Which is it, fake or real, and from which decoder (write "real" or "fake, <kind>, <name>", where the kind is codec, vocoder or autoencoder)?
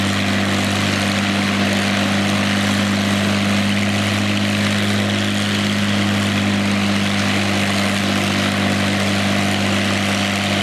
real